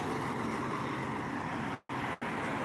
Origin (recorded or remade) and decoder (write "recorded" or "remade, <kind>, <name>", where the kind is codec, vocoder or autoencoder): recorded